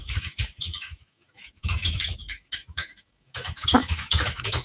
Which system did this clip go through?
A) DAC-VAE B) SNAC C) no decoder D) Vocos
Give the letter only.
A